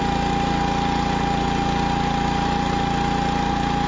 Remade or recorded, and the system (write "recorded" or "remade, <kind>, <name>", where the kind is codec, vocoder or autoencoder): recorded